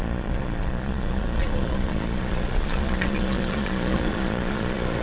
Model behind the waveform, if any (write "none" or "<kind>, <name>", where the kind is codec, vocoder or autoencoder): vocoder, Vocos